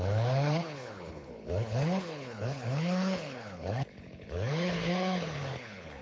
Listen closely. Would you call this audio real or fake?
fake